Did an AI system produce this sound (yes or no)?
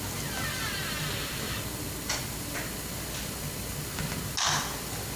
no